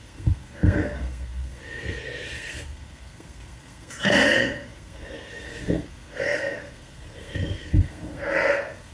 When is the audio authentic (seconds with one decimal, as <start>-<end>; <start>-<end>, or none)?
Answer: none